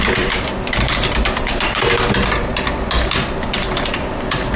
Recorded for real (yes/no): no